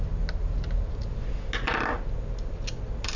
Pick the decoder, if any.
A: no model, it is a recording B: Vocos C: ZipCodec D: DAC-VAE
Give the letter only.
A